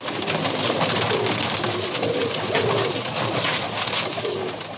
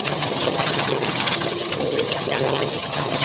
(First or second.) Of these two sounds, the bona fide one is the first